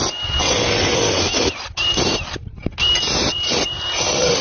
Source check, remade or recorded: recorded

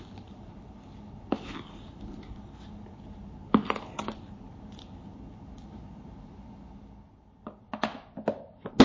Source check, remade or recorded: recorded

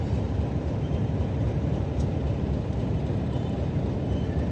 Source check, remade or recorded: remade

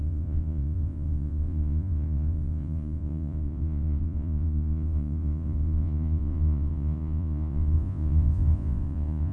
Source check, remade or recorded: remade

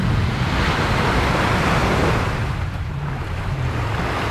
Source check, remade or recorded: recorded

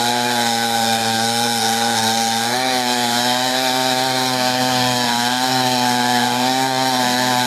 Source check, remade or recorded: remade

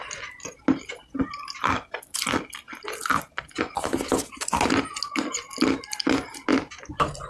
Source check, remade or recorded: recorded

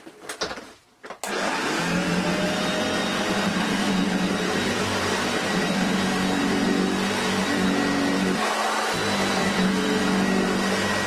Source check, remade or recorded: recorded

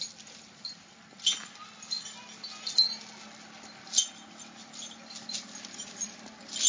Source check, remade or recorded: recorded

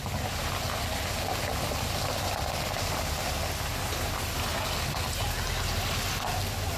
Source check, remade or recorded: recorded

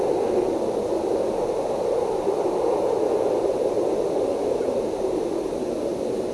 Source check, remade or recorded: recorded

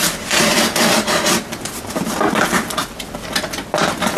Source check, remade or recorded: remade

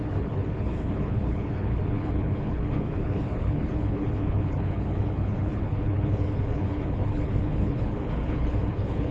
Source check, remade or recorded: remade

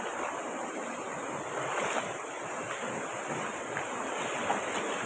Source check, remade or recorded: recorded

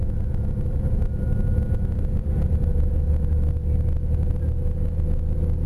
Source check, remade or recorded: recorded